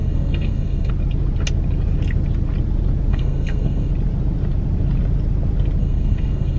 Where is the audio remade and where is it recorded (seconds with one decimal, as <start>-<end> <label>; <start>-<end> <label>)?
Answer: 0.0-0.9 remade; 0.9-3.1 recorded; 3.1-3.9 remade; 3.9-5.8 recorded; 5.8-6.6 remade